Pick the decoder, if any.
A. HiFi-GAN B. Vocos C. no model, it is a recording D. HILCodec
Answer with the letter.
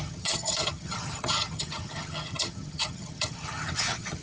A